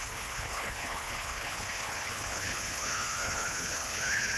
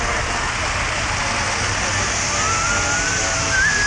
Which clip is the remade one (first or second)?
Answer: first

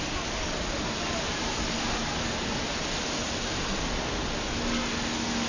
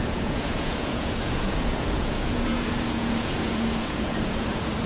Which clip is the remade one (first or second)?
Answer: second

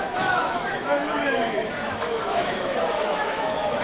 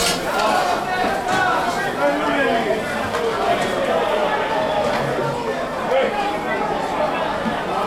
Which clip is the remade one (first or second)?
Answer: first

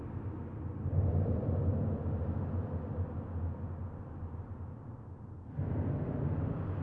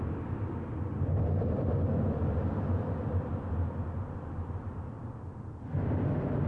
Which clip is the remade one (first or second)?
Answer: second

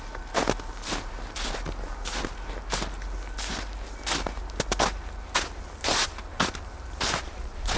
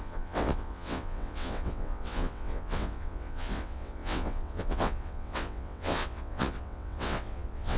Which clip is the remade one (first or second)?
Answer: second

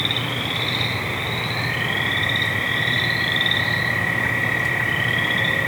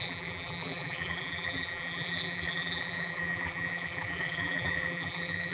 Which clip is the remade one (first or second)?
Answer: second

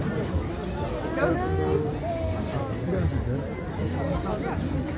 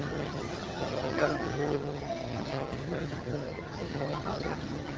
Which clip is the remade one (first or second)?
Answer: second